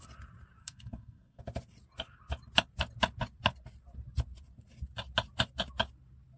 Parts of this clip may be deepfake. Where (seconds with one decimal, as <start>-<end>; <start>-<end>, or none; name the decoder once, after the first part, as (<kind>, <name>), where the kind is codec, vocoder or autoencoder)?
0.6-1.4 (codec, SNAC)